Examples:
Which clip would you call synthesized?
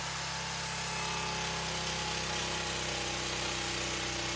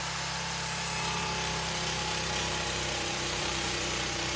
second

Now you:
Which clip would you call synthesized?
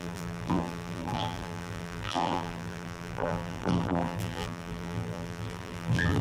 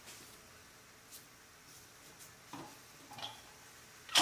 first